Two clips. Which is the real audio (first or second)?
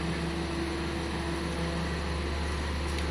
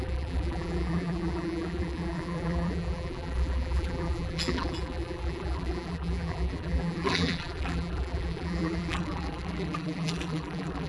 first